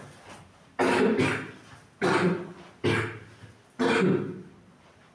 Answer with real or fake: real